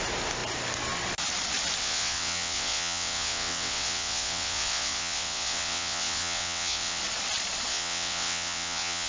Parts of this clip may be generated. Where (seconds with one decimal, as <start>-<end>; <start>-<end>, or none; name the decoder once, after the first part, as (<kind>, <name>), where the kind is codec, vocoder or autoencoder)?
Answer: 1.8-7.0 (vocoder, WaveNeXt); 7.7-9.1